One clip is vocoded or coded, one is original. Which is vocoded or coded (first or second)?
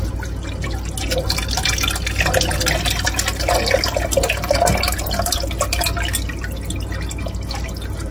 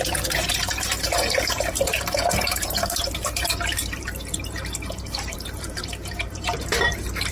second